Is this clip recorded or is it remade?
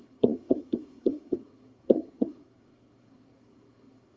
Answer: remade